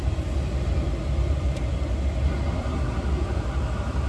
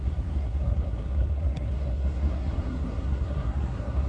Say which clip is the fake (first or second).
second